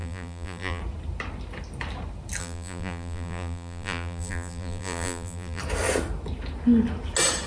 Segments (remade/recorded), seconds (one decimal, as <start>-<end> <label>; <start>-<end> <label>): 0.0-0.8 remade; 0.8-2.4 recorded; 2.4-5.6 remade; 5.6-7.5 recorded